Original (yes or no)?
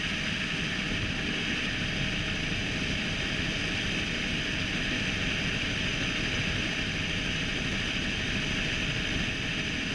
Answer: no